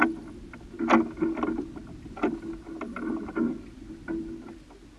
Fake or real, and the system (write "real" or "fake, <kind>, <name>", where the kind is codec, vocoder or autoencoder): real